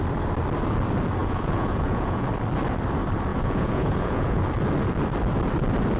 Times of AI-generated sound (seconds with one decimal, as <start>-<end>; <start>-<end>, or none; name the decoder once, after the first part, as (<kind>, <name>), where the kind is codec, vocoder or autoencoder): 1.2-2.3 (vocoder, Vocos); 3.3-4.4